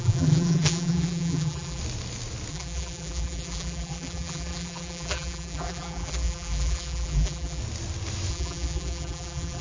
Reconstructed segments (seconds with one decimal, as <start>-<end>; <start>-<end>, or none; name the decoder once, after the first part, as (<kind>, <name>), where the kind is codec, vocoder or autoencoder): 0.0-1.8 (vocoder, BigVGAN v2); 2.5-7.6; 8.3-9.6